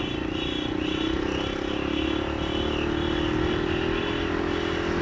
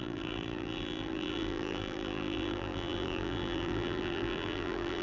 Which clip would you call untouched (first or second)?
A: first